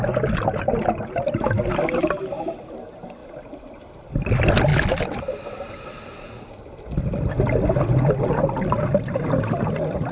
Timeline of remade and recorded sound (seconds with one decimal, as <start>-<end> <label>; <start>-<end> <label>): 0.0-3.2 recorded; 3.2-4.2 remade; 4.2-10.1 recorded